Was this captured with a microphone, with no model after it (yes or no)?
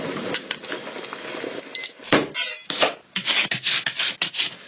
yes